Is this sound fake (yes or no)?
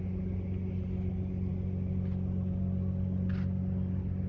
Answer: no